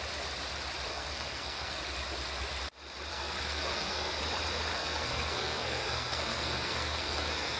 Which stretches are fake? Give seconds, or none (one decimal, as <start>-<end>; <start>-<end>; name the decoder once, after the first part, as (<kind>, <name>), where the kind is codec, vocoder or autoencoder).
0.9-1.8 (codec, SNAC); 3.1-4.2; 4.7-7.6